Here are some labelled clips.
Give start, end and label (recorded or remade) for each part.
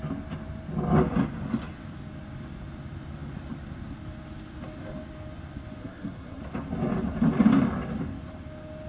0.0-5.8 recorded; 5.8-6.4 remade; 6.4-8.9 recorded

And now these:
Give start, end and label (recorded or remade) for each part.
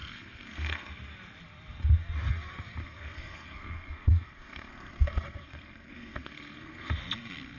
0.0-0.9 remade; 0.9-2.8 recorded; 2.8-6.9 remade; 6.9-7.6 recorded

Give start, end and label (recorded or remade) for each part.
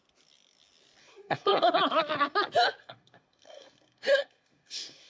0.0-1.0 recorded; 1.0-1.7 remade; 1.7-2.8 recorded; 2.8-5.1 remade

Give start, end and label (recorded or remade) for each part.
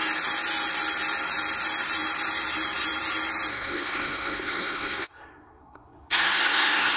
0.0-3.5 recorded; 3.5-7.0 remade